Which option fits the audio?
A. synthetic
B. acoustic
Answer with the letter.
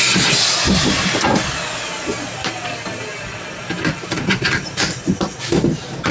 B